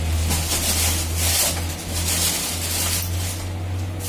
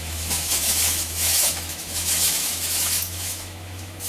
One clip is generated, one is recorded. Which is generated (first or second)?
second